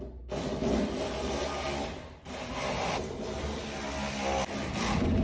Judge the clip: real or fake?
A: real